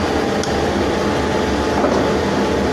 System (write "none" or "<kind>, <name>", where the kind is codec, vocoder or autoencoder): none